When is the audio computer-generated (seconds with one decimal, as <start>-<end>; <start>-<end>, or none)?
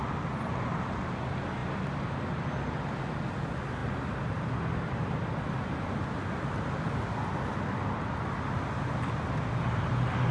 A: none